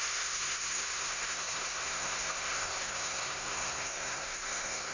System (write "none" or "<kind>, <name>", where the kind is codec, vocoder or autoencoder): codec, SNAC